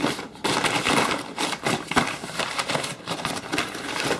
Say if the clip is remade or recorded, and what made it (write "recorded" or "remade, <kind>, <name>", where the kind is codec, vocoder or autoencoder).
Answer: remade, vocoder, BigVGAN v2